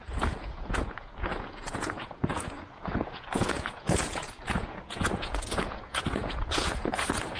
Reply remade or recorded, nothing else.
remade